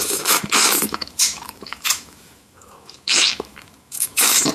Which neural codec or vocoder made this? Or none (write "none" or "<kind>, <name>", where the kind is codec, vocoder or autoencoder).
autoencoder, DAC-VAE